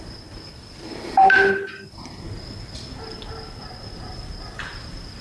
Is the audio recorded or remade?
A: recorded